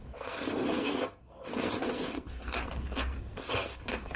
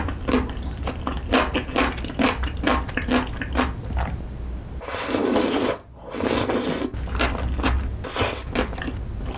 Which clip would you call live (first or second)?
second